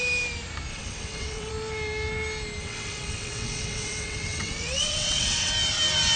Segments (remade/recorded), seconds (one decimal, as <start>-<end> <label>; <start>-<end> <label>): 0.0-0.7 recorded; 0.7-1.5 remade; 1.5-2.6 recorded; 2.6-5.5 remade; 5.5-6.2 recorded